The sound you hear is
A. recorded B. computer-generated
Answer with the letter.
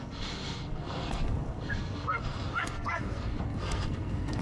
B